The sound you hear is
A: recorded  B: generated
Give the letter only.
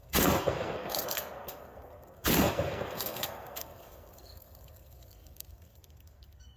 B